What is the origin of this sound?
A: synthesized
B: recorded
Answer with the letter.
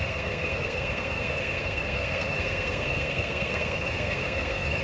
A